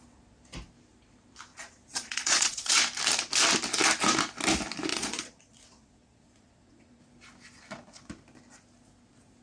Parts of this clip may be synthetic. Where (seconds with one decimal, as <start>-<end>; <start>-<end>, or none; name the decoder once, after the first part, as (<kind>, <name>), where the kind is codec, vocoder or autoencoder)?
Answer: 1.5-2.7 (vocoder, Vocos); 4.9-7.0